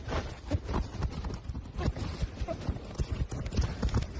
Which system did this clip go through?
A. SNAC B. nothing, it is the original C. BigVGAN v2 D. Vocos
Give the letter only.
C